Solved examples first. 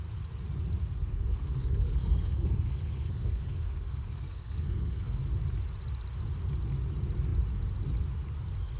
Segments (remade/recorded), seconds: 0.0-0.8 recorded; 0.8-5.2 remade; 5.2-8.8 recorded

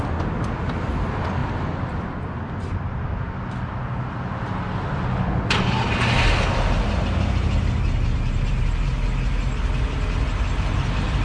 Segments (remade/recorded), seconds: 0.0-11.2 recorded

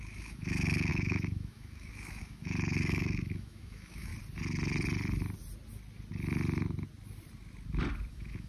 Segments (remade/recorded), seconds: 0.0-4.1 remade; 4.1-8.1 recorded; 8.1-8.5 remade

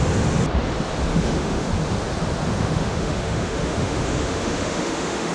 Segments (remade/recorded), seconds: 0.0-1.1 recorded; 1.1-1.7 remade; 1.7-2.5 recorded; 2.5-5.3 remade

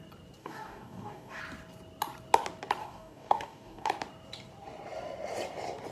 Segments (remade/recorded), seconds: 0.0-0.4 recorded; 0.4-1.4 remade; 1.4-2.8 recorded; 2.8-3.9 remade; 3.9-5.9 recorded

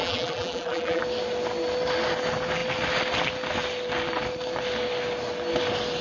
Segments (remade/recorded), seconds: 0.0-1.0 remade; 1.0-6.0 recorded

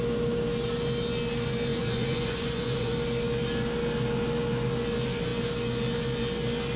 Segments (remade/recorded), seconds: 0.0-1.7 recorded; 1.7-2.9 remade; 2.9-6.8 recorded